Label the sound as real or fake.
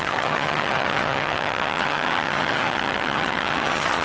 fake